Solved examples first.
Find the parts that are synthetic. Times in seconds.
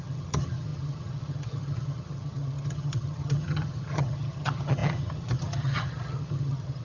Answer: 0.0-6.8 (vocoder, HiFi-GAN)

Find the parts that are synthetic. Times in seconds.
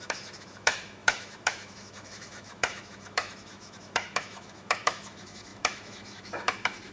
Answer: 0.0-6.9 (autoencoder, DAC-VAE)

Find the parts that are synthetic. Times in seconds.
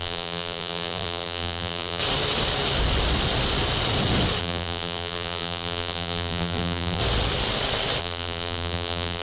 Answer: 0.0-2.0 (vocoder, BigVGAN v2); 4.4-7.0; 8.0-9.2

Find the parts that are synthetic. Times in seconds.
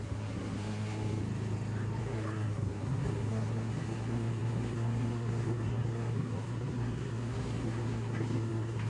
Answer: 0.0-1.2 (codec, SNAC); 2.0-8.9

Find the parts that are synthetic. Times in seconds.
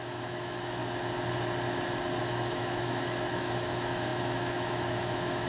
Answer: 0.0-0.8 (autoencoder, DAC-VAE); 2.2-5.5